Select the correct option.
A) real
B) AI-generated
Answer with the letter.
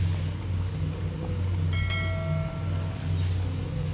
A